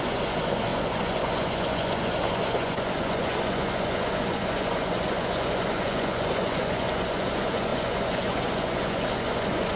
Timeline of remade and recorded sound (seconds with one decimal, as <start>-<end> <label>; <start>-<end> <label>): 0.0-9.8 remade